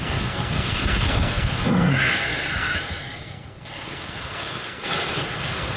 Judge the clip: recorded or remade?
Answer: remade